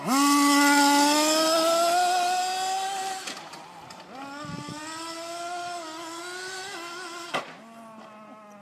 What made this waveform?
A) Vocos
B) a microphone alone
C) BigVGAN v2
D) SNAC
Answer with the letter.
B